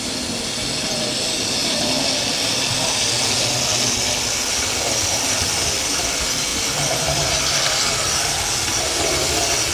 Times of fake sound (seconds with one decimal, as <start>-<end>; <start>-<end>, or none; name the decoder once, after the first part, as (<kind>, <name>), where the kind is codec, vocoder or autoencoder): 6.5-7.4 (vocoder, BigVGAN v2)